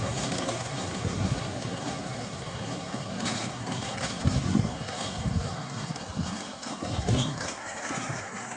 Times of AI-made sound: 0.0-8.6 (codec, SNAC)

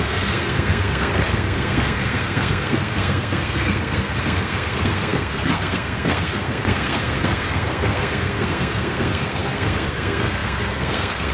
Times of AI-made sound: 0.0-11.3 (codec, SNAC)